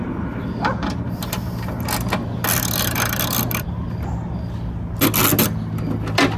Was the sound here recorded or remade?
recorded